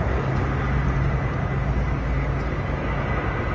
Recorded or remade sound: recorded